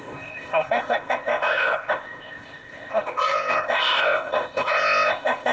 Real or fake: fake